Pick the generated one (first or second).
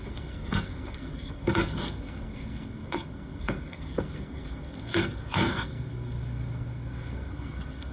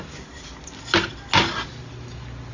first